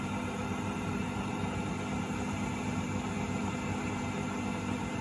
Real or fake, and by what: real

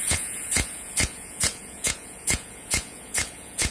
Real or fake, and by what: fake, vocoder, Vocos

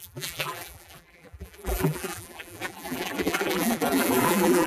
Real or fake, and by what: fake, vocoder, BigVGAN v2